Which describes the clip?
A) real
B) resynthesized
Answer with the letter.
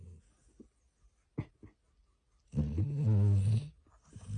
A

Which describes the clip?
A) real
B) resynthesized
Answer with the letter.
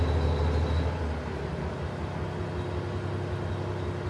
A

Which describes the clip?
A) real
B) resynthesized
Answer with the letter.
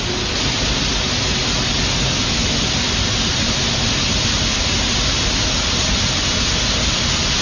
A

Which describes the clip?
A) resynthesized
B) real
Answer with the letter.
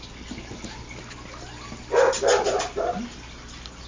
B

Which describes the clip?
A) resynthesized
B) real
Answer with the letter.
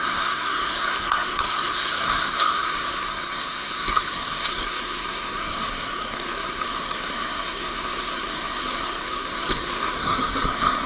A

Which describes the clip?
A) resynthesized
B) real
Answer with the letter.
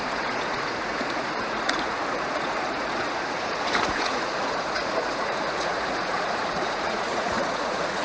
A